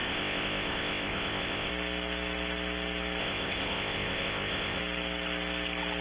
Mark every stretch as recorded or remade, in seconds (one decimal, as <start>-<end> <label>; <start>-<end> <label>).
0.0-1.7 remade; 1.7-3.2 recorded; 3.2-4.8 remade; 4.8-6.0 recorded